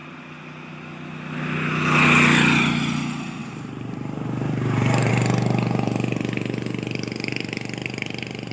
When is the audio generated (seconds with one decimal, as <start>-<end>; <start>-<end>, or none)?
3.4-5.1